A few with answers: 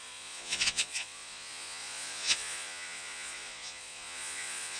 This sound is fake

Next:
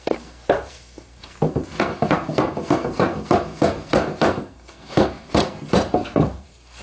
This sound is fake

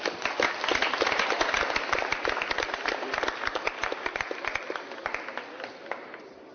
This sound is real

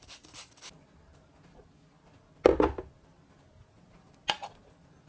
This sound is real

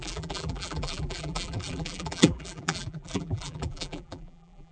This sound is fake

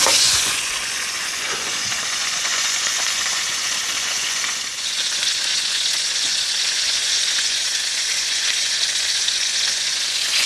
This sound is fake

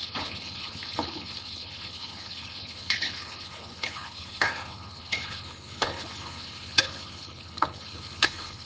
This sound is fake